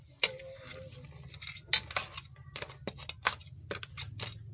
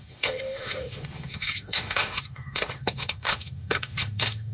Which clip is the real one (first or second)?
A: first